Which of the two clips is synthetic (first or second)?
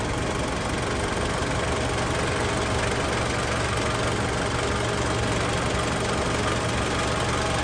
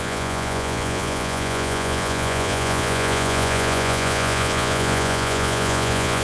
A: second